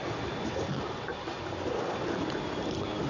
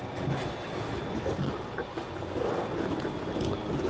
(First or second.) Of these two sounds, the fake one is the first